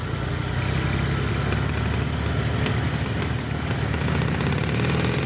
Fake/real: real